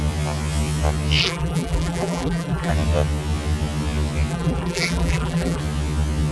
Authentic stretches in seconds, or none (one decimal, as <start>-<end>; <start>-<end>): 0.0-1.2; 2.7-4.3; 5.6-6.3